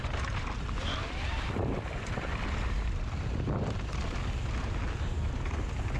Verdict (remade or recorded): recorded